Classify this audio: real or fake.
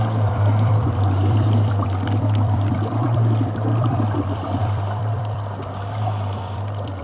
fake